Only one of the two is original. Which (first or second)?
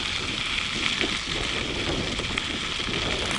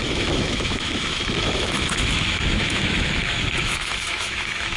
first